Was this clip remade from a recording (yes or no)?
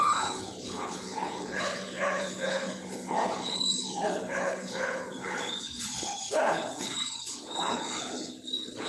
yes